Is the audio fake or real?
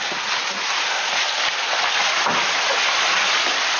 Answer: real